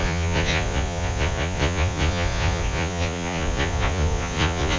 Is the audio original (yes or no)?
no